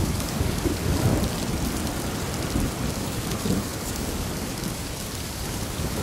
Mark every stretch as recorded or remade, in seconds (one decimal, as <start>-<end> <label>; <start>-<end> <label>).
0.0-1.1 remade; 1.1-2.9 recorded; 2.9-6.0 remade